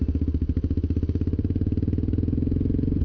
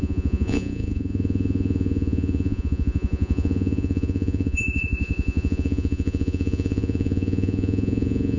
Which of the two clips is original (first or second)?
first